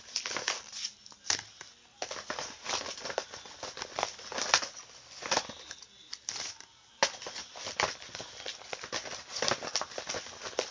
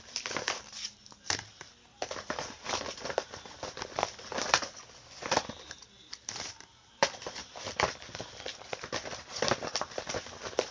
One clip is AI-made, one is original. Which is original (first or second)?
first